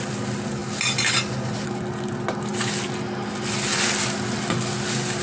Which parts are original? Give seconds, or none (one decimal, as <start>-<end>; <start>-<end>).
0.0-5.2